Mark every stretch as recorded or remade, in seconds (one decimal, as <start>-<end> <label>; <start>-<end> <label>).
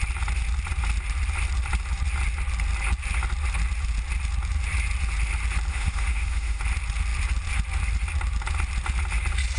0.0-5.7 recorded; 5.7-6.6 remade; 6.6-9.6 recorded